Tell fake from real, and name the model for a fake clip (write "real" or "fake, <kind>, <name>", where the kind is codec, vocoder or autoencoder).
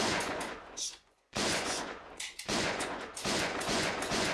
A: fake, vocoder, Vocos